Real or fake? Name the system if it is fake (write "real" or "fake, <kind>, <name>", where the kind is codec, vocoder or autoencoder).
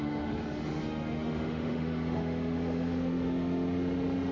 fake, autoencoder, DAC-VAE